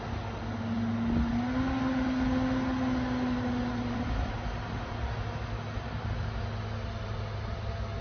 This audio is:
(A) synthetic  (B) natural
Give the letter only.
B